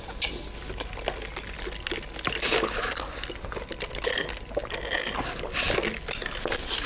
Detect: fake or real real